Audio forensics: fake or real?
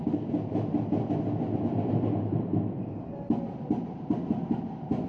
real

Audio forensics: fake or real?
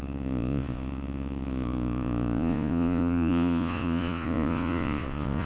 fake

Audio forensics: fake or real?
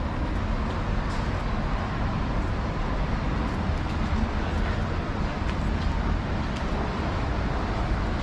real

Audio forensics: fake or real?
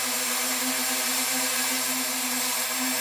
fake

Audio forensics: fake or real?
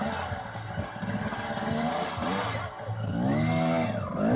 real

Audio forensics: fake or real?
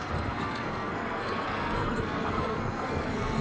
fake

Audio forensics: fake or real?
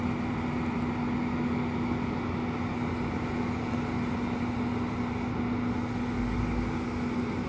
real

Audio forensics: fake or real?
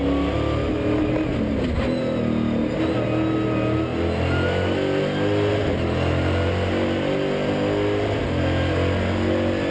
real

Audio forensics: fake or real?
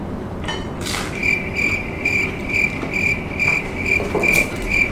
real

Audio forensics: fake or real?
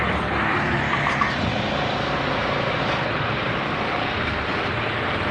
real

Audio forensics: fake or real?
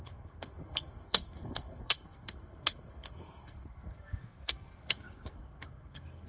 fake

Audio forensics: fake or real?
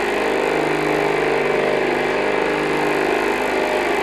real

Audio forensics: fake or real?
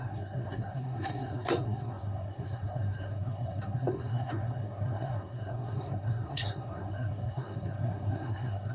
fake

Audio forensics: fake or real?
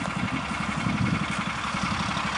real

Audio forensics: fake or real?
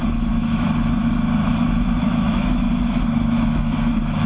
fake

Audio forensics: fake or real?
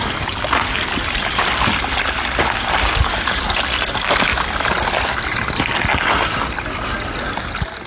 real